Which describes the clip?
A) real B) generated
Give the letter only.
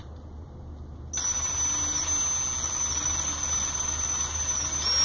A